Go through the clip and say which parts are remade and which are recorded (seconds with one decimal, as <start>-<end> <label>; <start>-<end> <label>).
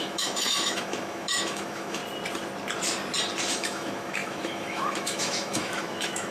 0.0-2.0 remade; 2.0-3.5 recorded; 3.5-6.3 remade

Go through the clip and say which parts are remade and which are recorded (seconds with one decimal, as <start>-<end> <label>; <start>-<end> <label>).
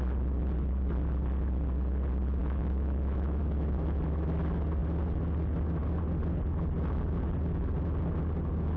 0.0-2.4 recorded; 2.4-3.4 remade; 3.4-8.8 recorded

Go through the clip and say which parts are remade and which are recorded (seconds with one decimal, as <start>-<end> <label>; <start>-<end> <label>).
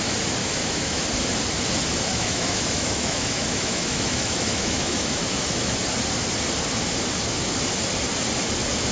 0.0-0.4 recorded; 0.4-1.0 remade; 1.0-2.1 recorded; 2.1-5.7 remade; 5.7-8.9 recorded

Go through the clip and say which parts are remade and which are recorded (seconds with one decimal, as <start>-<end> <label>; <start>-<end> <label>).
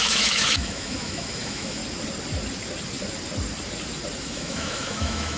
0.0-1.8 remade; 1.8-4.2 recorded; 4.2-5.4 remade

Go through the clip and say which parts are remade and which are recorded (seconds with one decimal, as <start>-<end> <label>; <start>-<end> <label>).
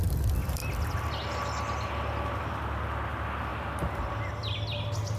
0.0-5.2 recorded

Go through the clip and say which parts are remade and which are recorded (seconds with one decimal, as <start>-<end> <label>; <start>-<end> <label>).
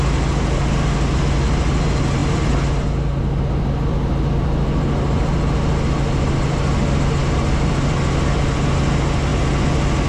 0.0-10.1 recorded